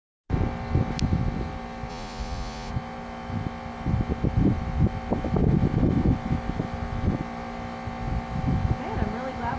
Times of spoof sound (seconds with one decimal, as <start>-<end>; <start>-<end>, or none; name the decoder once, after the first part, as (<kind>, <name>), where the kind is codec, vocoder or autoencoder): 1.9-2.7 (vocoder, Vocos)